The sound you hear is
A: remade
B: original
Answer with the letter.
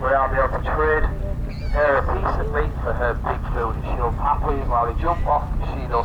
B